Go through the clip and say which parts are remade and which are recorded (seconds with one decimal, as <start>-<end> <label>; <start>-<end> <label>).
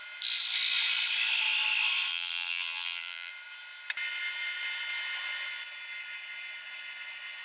0.0-2.1 recorded; 2.1-3.3 remade; 3.3-7.4 recorded